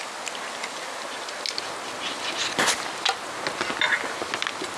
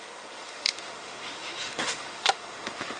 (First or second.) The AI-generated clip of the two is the second